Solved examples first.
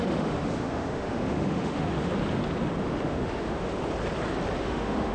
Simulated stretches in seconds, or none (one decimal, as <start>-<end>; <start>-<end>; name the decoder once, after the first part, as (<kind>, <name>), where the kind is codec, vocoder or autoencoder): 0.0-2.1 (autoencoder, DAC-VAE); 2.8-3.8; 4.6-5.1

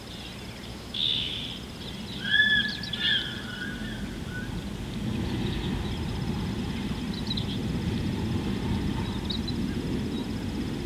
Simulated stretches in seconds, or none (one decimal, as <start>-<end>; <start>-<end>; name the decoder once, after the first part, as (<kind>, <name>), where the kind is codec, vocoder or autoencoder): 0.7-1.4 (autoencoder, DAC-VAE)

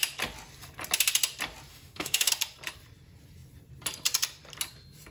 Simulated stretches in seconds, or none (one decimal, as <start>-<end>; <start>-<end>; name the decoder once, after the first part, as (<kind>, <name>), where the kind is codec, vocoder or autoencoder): 1.7-2.3 (autoencoder, DAC-VAE)

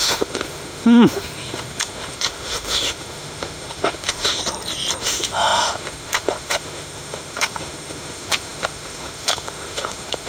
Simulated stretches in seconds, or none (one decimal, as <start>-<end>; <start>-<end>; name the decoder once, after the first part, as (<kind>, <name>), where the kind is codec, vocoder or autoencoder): 0.0-4.4 (autoencoder, DAC-VAE); 5.0-10.3

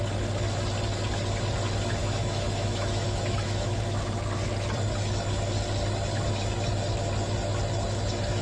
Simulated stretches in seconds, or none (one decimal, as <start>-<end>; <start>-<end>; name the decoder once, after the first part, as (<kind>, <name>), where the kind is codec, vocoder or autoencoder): 2.0-3.8 (autoencoder, DAC-VAE)